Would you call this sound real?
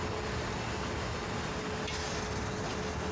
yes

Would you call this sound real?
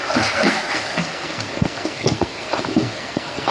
no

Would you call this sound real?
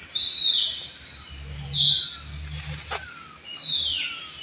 yes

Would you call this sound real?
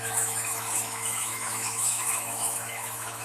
no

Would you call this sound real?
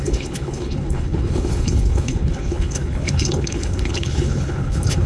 no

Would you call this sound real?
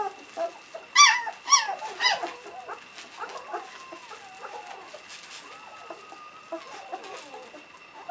yes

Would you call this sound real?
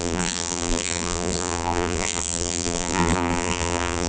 no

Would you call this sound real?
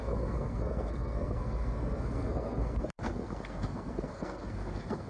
no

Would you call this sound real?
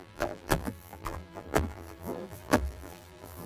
no